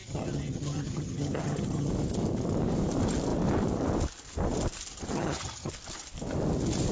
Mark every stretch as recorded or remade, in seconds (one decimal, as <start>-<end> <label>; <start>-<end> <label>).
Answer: 0.0-1.9 remade; 1.9-5.1 recorded; 5.1-5.7 remade; 5.7-6.9 recorded